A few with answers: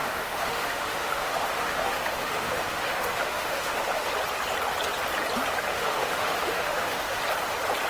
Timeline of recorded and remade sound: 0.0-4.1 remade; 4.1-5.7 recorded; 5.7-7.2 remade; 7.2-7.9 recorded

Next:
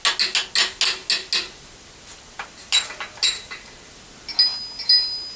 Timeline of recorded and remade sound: 0.0-5.4 recorded

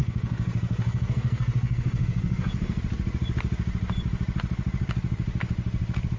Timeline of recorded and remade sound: 0.0-2.8 remade; 2.8-6.2 recorded

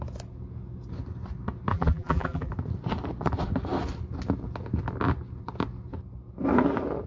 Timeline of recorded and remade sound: 0.0-1.7 recorded; 1.7-2.5 remade; 2.5-7.1 recorded

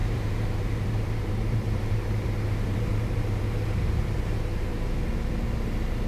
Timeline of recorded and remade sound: 0.0-4.7 remade; 4.7-6.1 recorded

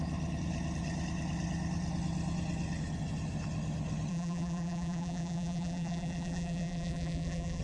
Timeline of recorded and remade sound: 0.0-4.1 recorded; 4.1-7.6 remade